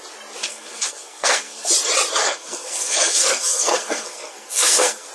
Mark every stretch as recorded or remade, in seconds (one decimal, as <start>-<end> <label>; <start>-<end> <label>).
0.0-0.4 recorded; 0.4-1.7 remade; 1.7-2.2 recorded; 2.2-5.1 remade